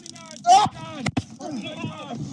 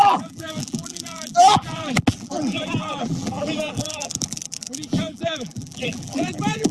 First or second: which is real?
first